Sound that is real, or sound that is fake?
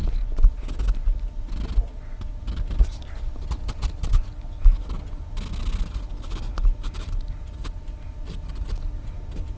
real